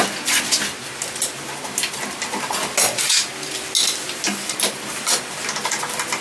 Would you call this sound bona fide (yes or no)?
yes